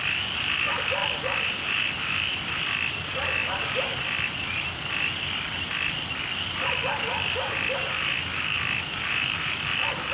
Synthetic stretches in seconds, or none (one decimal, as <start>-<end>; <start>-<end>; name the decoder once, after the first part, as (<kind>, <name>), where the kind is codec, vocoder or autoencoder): none